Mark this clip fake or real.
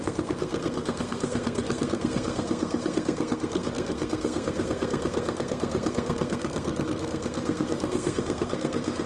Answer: fake